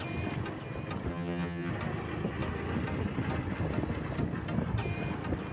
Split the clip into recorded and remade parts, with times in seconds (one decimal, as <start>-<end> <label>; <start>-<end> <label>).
0.0-1.1 recorded; 1.1-1.7 remade; 1.7-5.5 recorded